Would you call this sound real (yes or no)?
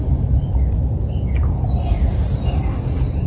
yes